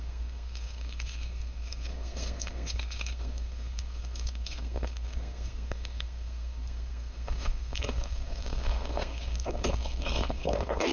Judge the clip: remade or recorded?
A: remade